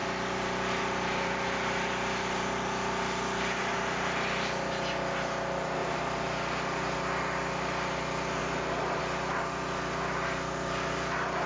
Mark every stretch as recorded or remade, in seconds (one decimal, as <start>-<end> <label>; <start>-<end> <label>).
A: 0.0-3.8 remade; 3.8-5.8 recorded; 5.8-6.5 remade; 6.5-11.5 recorded